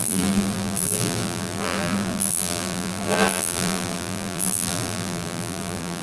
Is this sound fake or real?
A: fake